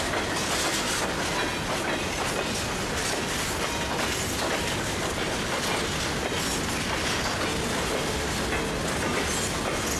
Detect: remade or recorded recorded